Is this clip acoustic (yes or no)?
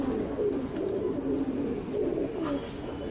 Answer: yes